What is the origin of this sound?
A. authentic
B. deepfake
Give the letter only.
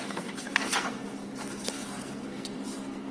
B